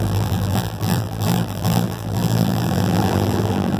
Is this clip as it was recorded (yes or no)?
no